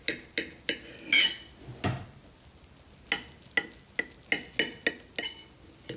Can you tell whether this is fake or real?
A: real